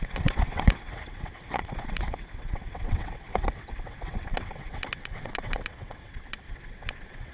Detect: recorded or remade remade